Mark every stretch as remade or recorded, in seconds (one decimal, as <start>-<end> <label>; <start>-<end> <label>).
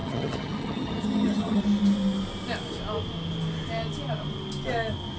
0.0-1.6 remade; 1.6-5.2 recorded